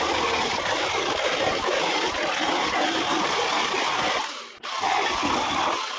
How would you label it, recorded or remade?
recorded